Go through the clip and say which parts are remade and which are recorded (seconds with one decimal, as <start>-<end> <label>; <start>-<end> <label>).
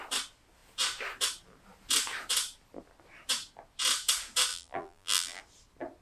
0.0-4.5 recorded; 4.5-5.4 remade; 5.4-6.0 recorded